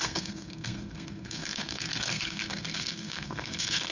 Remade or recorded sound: remade